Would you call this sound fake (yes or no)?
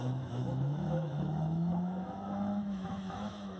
yes